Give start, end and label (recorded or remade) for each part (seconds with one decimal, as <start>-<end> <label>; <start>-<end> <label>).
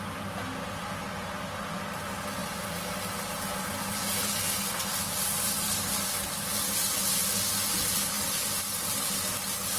0.0-9.8 recorded